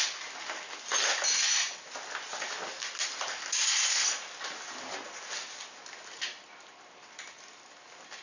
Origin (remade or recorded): recorded